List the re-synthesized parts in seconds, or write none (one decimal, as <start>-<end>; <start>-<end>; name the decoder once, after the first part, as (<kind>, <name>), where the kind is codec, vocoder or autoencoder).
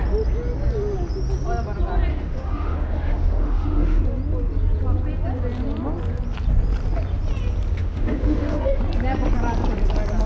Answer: 2.1-4.0 (autoencoder, DAC-VAE); 7.8-8.8